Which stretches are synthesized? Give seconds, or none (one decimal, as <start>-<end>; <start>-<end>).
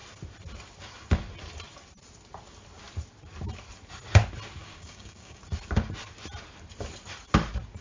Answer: 4.6-5.4